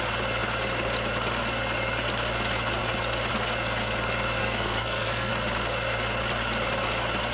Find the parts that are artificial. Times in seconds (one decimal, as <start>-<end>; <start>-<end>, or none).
4.4-5.3